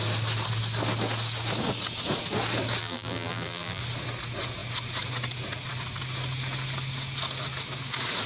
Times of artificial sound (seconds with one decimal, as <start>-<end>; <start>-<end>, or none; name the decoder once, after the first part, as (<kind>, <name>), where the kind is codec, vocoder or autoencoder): 2.8-3.8 (vocoder, BigVGAN v2)